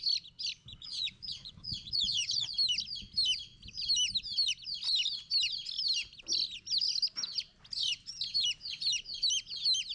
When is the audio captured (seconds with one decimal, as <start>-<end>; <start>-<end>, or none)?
0.0-0.7; 2.5-9.9